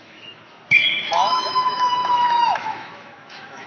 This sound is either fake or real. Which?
fake